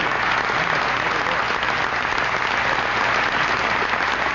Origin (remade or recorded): recorded